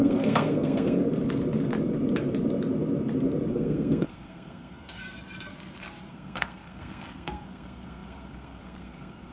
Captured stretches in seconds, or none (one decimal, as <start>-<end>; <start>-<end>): 1.0-3.5; 5.0-6.1